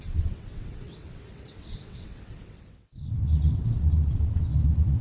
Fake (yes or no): yes